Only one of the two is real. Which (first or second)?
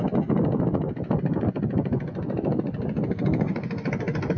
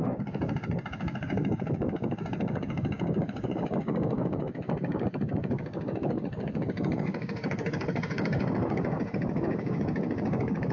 first